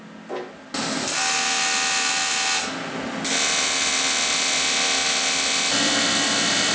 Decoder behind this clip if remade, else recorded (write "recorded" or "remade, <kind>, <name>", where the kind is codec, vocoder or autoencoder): recorded